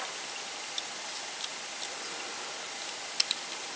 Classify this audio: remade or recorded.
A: recorded